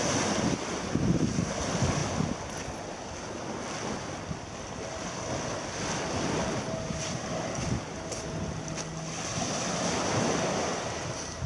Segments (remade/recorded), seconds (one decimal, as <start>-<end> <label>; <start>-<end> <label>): 0.0-11.5 recorded